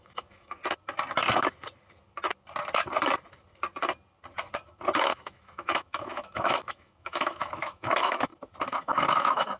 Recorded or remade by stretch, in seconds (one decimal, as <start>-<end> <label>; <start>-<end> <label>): 0.0-0.6 remade; 0.6-5.0 recorded; 5.0-8.3 remade; 8.3-8.8 recorded; 8.8-9.6 remade